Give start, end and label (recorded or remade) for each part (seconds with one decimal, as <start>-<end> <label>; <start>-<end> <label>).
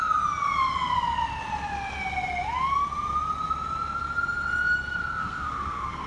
0.0-5.2 recorded; 5.2-6.1 remade